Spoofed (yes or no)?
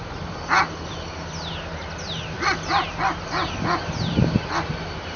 no